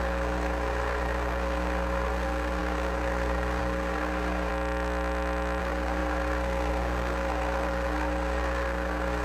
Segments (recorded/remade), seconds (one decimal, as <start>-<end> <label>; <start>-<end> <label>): 0.0-4.5 remade; 4.5-5.6 recorded; 5.6-9.2 remade